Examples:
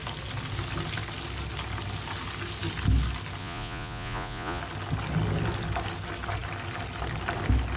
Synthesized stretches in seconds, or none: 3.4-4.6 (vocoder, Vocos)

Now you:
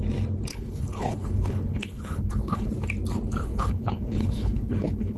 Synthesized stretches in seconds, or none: 0.5-2.7 (codec, HILCodec); 3.4-5.2

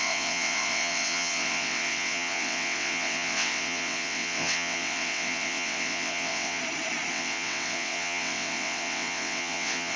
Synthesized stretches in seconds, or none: 0.0-6.6 (vocoder, WaveNeXt); 7.1-10.0

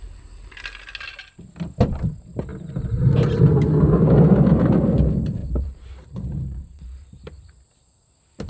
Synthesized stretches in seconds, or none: 5.4-7.4 (vocoder, BigVGAN v2)

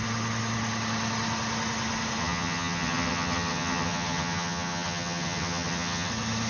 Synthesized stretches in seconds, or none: 2.2-6.1 (vocoder, HiFi-GAN)

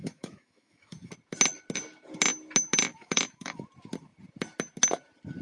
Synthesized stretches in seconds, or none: 0.0-1.1 (autoencoder, DAC-VAE); 2.9-3.6